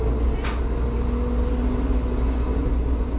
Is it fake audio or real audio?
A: real